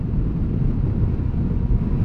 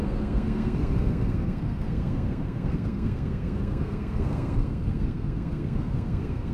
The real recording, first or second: first